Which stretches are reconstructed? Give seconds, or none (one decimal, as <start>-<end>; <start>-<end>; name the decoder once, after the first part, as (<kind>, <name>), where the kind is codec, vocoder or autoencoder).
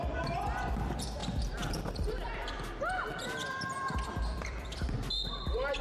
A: 0.0-5.8 (vocoder, BigVGAN v2)